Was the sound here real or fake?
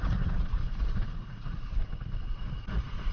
fake